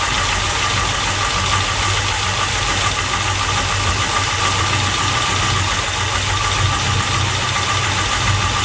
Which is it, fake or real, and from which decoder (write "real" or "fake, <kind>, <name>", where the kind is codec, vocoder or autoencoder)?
real